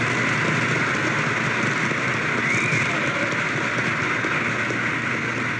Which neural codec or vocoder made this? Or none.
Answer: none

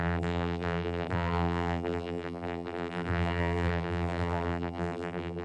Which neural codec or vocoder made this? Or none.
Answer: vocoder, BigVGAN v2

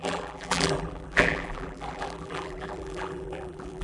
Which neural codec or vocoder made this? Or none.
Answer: vocoder, BigVGAN v2